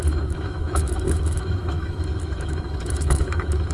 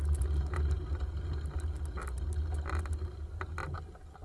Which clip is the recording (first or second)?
second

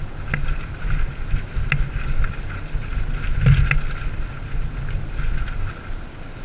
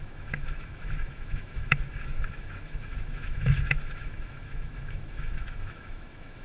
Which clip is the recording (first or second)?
first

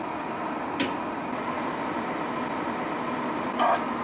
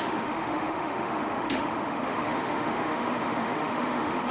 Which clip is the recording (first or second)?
first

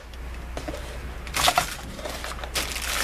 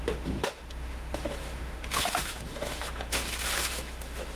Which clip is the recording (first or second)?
first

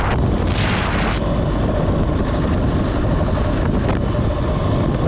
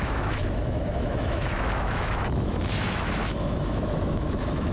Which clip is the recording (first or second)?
first